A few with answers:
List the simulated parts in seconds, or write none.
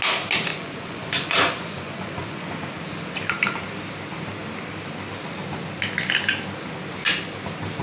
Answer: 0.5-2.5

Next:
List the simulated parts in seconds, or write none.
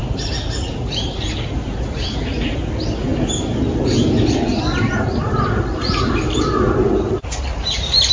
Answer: none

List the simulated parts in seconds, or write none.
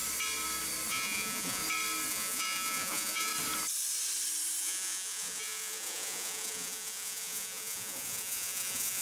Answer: 0.9-1.6; 2.1-3.3; 4.6-9.0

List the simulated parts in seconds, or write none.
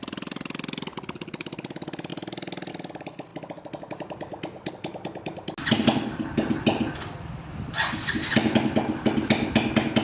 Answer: none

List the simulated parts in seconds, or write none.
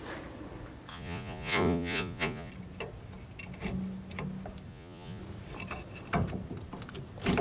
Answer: 0.9-2.5; 4.7-5.2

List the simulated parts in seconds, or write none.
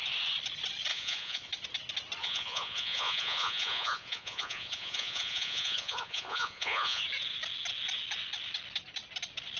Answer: 0.9-1.5; 2.2-7.0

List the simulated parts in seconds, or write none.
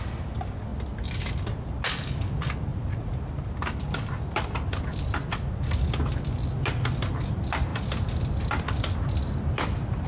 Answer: 2.7-3.2